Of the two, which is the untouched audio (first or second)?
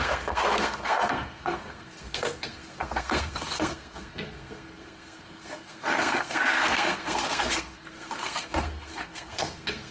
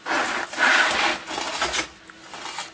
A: second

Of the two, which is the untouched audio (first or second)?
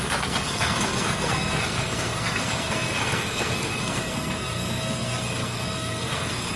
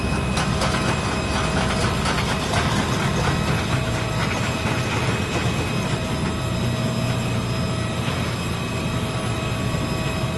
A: second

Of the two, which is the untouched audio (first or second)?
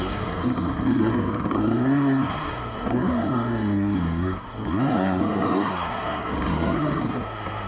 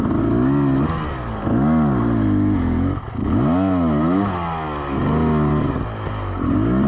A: second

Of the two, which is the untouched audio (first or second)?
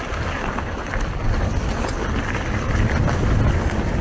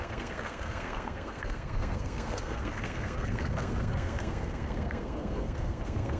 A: first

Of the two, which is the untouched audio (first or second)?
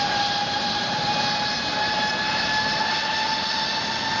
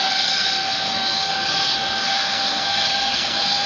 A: first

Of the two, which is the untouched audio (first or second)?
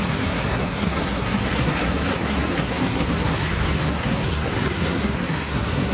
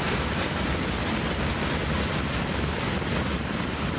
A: second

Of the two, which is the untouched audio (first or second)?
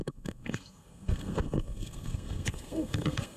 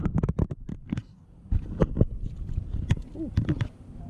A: second